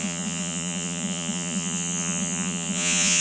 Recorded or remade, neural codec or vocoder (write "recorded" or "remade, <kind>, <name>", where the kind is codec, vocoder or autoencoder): remade, vocoder, Vocos